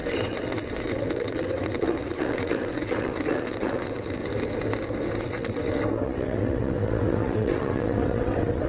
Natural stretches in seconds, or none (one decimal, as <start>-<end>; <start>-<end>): 4.2-5.2